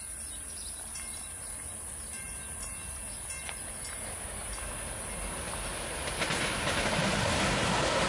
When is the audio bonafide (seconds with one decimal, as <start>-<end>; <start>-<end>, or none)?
2.8-6.9